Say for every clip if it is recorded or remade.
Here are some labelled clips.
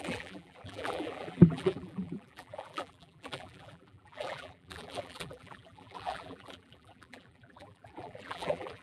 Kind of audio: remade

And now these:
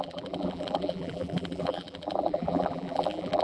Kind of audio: remade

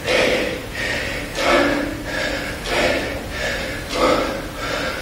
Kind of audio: recorded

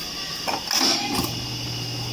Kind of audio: recorded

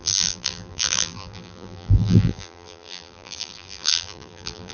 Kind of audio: remade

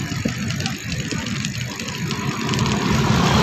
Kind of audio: remade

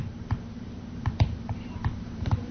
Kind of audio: remade